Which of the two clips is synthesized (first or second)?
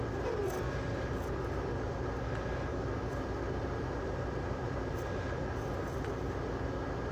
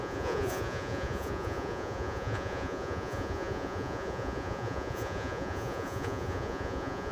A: second